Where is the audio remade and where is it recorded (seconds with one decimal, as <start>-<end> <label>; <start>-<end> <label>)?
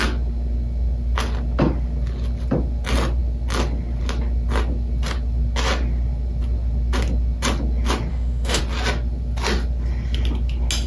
0.0-8.1 recorded; 8.1-8.6 remade; 8.6-10.9 recorded